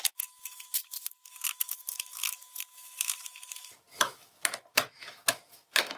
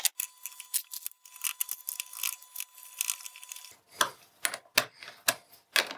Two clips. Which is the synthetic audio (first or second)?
first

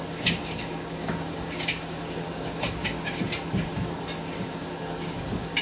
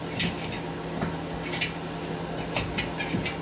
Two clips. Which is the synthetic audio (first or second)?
first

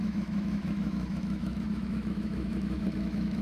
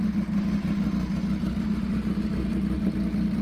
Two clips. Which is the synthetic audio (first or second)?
first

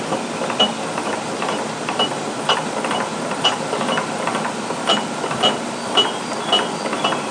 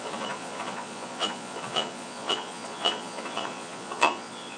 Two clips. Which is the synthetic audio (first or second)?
second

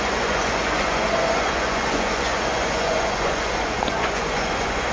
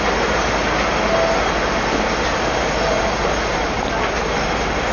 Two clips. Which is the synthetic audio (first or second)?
first